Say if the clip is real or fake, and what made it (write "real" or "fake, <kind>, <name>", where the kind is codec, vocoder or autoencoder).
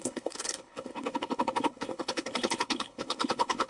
fake, codec, HILCodec